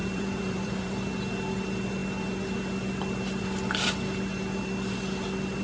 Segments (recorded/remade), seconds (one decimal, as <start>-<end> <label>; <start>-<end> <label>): 0.0-1.1 remade; 1.1-5.6 recorded